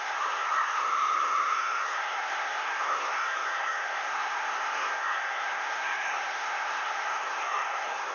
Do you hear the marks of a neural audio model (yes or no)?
yes